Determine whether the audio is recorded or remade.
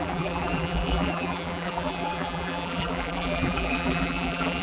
remade